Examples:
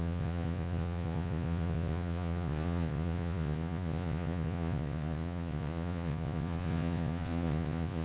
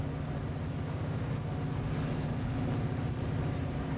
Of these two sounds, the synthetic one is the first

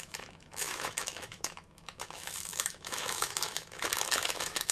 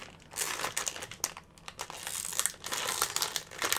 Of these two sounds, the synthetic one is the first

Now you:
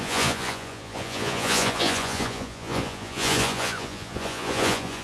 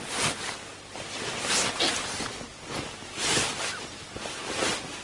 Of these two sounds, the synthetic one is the first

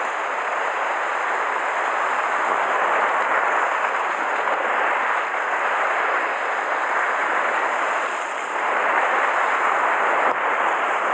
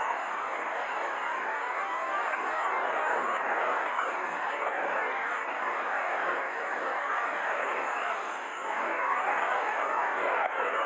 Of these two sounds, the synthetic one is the second